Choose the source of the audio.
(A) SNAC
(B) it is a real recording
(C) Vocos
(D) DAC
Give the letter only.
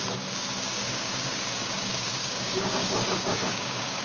D